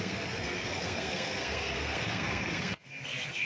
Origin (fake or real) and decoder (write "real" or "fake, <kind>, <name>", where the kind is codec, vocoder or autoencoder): fake, codec, SNAC